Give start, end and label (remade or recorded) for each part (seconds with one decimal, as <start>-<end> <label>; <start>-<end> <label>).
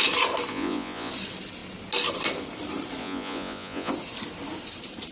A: 0.0-0.5 recorded; 0.5-1.1 remade; 1.1-3.0 recorded; 3.0-3.9 remade; 3.9-5.1 recorded